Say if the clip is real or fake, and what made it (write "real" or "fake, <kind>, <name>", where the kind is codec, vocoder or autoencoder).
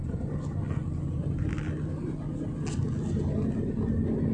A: real